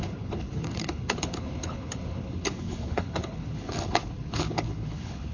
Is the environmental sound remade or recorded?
remade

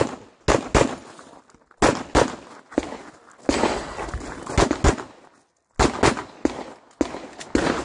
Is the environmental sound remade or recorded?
recorded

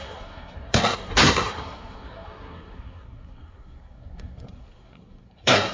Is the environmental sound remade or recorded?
remade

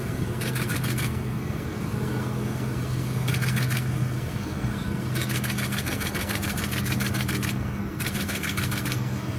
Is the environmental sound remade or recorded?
remade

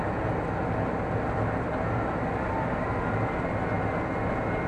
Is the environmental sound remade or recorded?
recorded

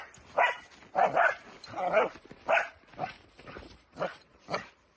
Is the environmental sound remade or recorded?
recorded